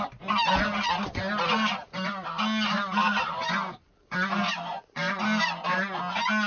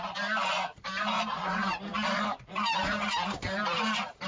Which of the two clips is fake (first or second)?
second